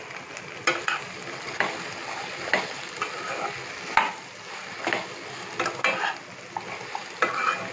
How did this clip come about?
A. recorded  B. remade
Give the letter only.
A